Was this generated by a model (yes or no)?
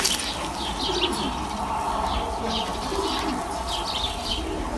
no